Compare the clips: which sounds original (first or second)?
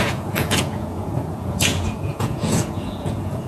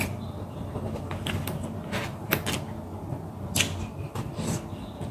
second